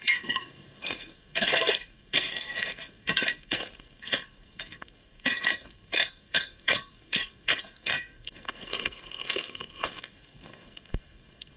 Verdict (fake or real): fake